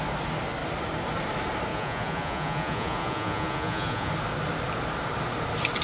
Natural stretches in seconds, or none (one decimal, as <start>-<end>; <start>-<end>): 0.0-1.7; 4.1-5.8